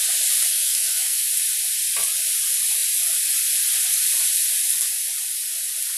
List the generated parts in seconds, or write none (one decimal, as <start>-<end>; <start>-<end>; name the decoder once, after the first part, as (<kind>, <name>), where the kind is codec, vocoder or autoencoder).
0.5-1.3 (codec, SNAC)